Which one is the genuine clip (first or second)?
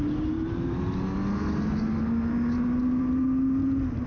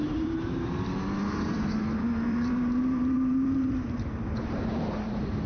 first